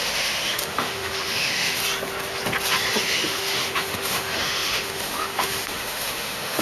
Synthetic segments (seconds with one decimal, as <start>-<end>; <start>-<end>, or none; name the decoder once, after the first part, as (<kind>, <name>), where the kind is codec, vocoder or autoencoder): 0.0-1.8 (autoencoder, DAC-VAE); 3.0-6.6